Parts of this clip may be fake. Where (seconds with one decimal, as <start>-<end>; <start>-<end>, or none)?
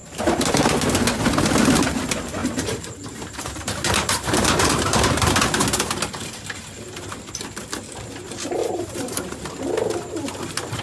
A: 0.0-0.8; 2.4-5.4; 8.6-9.4